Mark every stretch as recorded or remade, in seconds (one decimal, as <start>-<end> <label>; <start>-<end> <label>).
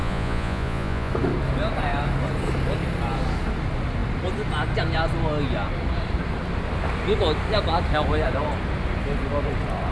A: 0.0-1.1 remade; 1.1-9.9 recorded